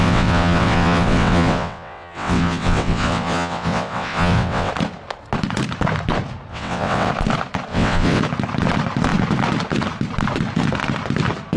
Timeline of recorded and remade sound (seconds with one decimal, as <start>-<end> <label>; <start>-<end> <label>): 0.0-4.7 remade; 4.7-6.5 recorded; 6.5-7.1 remade; 7.1-7.7 recorded; 7.7-8.2 remade; 8.2-11.6 recorded